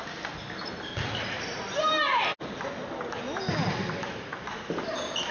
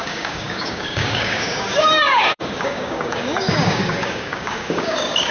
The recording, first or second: first